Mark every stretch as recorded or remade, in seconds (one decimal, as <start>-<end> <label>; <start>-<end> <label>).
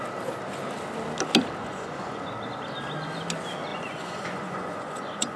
0.0-1.6 recorded; 1.6-2.2 remade; 2.2-3.7 recorded; 3.7-5.4 remade